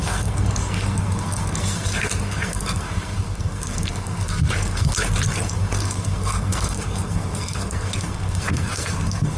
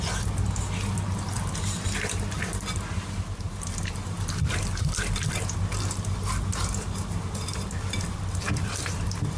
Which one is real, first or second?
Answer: second